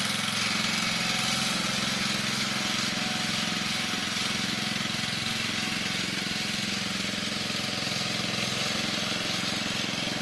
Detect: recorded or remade recorded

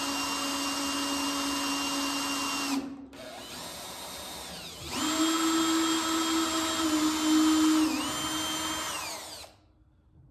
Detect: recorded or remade recorded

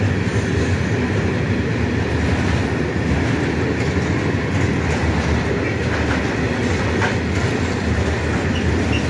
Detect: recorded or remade recorded